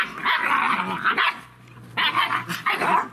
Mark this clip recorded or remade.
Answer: recorded